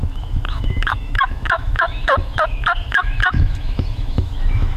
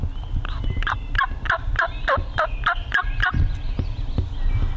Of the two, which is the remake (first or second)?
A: first